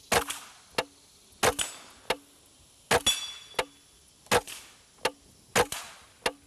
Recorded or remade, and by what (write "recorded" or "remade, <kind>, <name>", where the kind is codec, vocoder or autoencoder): recorded